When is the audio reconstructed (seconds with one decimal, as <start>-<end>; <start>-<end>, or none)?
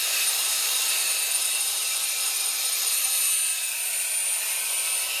0.0-3.1